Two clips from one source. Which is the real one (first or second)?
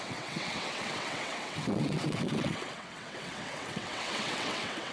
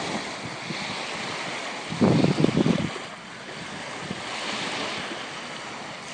second